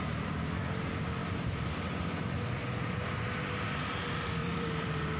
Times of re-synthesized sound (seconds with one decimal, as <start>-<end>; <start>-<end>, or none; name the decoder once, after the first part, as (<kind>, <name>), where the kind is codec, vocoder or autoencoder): 1.2-1.7 (vocoder, BigVGAN v2); 2.6-3.1; 4.4-5.2